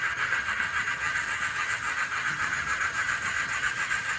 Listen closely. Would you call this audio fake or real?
fake